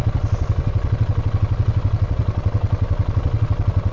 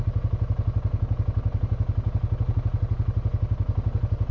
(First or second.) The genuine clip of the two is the second